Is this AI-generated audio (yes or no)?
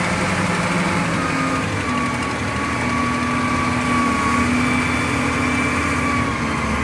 no